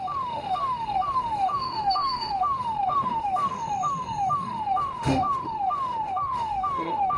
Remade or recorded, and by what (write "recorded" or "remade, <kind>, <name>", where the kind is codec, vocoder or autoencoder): remade, autoencoder, DAC-VAE